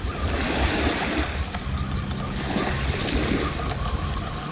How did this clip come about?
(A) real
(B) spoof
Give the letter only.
A